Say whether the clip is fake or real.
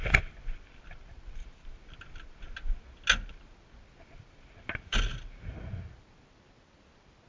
real